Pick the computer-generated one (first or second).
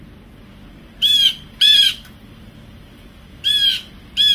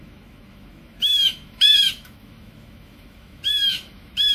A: second